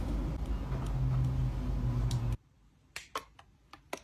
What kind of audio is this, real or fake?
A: real